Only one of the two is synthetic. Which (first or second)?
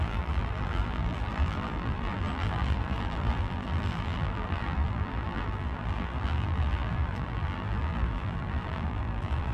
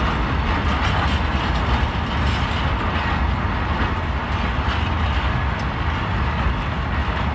first